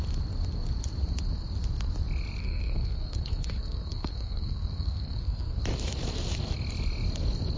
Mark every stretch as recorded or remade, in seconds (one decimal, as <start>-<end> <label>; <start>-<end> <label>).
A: 0.0-2.4 recorded; 2.4-5.6 remade; 5.6-7.6 recorded